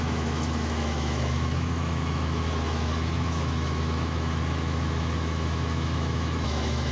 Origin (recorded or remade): remade